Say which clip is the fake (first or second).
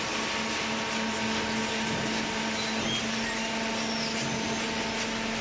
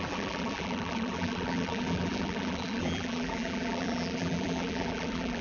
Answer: second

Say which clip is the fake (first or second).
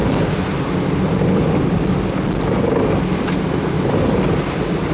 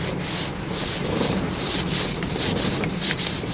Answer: second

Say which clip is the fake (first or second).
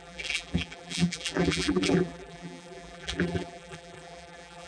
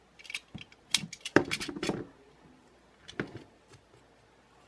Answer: first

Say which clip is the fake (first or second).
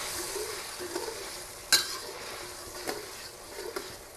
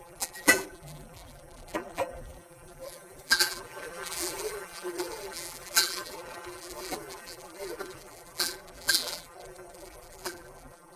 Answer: second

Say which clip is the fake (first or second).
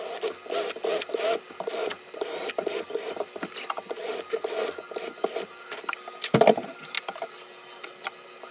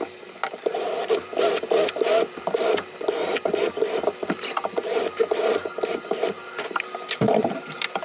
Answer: second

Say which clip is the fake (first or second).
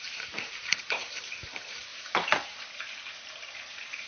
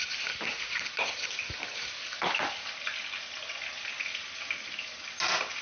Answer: first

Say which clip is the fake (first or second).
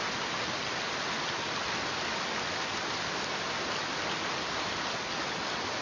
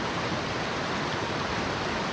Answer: second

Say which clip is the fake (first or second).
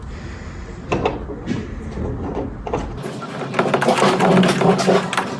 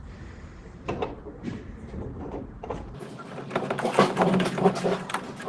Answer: second